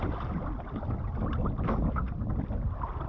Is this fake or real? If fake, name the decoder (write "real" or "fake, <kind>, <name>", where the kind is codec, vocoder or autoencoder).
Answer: real